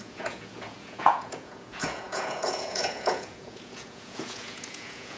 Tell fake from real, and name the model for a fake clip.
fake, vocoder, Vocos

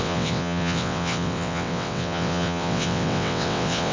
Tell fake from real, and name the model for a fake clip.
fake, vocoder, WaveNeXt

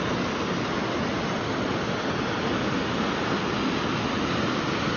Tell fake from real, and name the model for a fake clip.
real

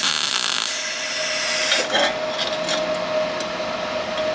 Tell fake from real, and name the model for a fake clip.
real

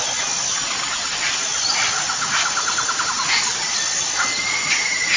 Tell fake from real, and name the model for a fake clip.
real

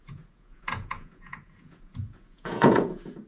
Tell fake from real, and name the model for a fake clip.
fake, vocoder, Vocos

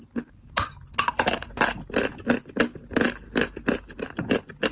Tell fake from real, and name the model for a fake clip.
real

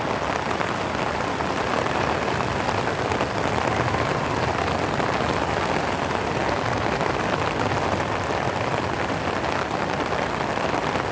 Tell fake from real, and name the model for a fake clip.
real